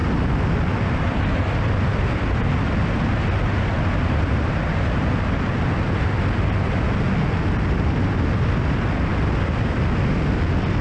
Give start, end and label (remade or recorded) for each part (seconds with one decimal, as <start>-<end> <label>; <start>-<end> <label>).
0.0-10.8 recorded